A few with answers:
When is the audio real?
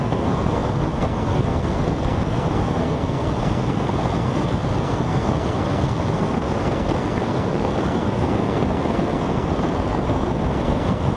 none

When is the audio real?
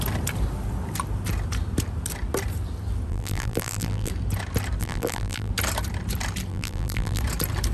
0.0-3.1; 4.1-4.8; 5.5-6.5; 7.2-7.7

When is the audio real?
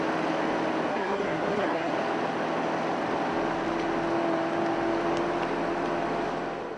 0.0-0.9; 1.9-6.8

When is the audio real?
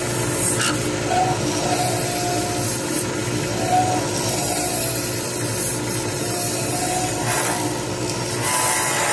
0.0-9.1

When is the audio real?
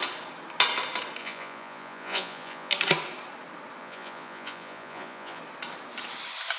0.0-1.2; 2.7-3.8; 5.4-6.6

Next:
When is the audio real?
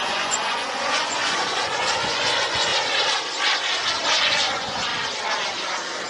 2.7-4.2; 4.9-6.1